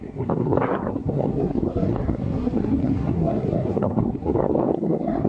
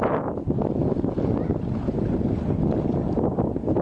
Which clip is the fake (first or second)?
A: first